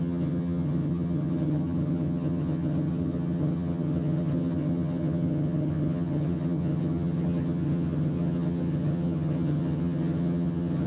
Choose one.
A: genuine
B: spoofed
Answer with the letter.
B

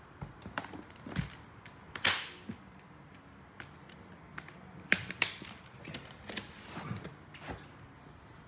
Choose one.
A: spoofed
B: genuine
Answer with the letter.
B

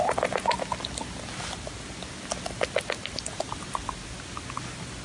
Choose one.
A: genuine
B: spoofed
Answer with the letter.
A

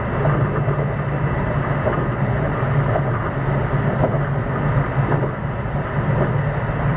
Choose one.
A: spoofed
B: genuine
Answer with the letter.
B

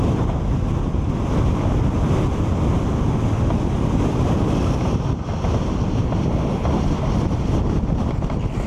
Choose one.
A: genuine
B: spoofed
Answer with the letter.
A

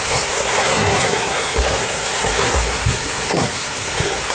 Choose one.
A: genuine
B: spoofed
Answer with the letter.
B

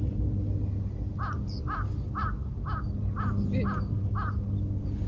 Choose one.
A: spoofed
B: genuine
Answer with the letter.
B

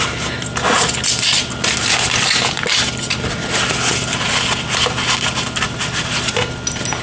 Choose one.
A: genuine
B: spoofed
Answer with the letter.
A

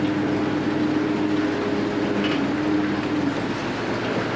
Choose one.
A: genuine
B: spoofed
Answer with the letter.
A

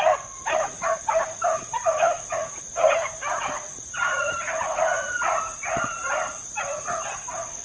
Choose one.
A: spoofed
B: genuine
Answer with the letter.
A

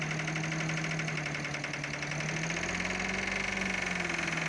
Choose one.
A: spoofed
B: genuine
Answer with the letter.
B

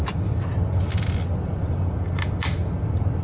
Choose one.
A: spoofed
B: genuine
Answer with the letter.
B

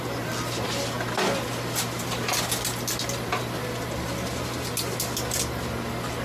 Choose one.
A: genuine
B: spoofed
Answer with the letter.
A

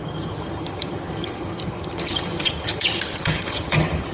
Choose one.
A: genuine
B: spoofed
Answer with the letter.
B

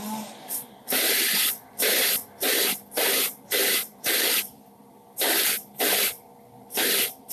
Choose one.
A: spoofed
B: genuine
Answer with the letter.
A